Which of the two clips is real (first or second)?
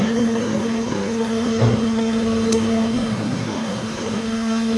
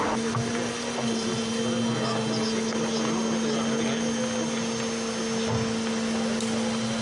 second